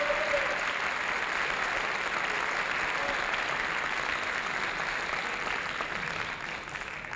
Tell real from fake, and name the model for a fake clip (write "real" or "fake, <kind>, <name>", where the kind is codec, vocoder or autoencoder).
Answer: real